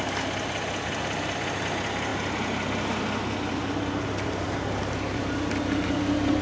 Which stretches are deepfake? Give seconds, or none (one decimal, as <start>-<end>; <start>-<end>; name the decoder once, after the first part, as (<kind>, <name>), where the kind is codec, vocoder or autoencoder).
none